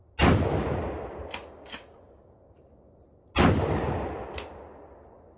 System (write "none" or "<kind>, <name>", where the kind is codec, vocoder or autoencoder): none